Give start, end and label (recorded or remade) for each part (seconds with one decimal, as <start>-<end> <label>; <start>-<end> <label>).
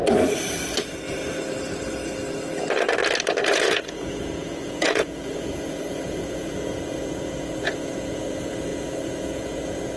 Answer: 0.0-3.4 recorded; 3.4-10.0 remade